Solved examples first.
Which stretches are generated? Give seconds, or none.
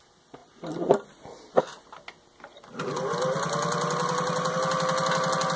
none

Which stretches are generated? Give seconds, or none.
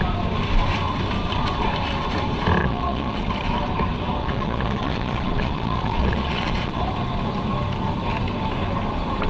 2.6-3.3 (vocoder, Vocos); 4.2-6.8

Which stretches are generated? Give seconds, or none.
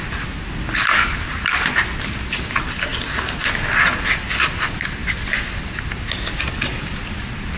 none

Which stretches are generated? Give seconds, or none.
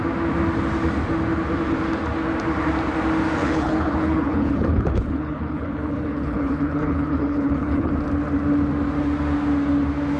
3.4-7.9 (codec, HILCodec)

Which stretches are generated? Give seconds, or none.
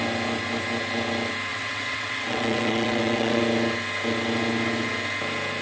1.5-3.4 (vocoder, WaveNeXt)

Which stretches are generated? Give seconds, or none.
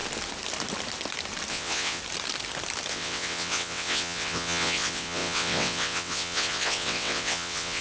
1.5-2.0 (vocoder, WaveNeXt); 2.9-7.8